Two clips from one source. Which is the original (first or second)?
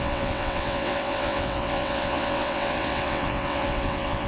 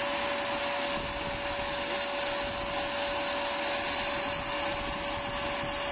second